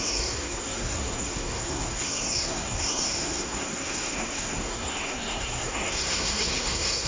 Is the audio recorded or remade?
remade